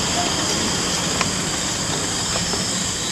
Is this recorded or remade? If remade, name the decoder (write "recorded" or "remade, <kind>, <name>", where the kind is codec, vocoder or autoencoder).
recorded